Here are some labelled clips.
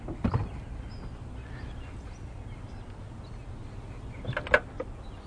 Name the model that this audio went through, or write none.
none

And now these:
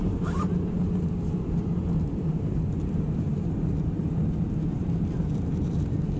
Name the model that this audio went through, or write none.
vocoder, BigVGAN v2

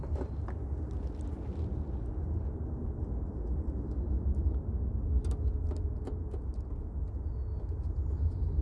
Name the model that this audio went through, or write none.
none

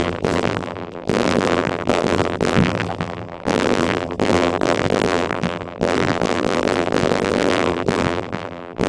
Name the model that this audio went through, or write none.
vocoder, BigVGAN v2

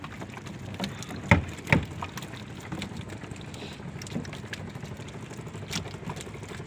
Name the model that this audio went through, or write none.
none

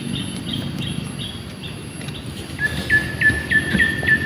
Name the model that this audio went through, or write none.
none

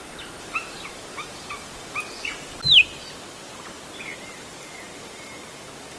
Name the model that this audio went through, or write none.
vocoder, BigVGAN v2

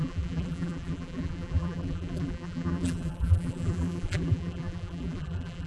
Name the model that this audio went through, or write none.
vocoder, BigVGAN v2